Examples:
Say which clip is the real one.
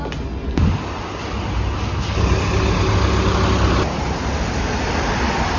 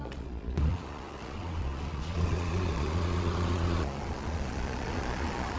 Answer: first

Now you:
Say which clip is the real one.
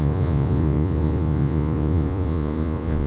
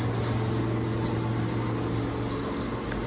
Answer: second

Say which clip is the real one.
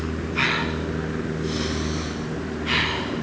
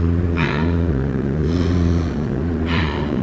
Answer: first